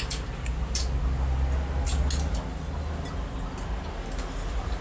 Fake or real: real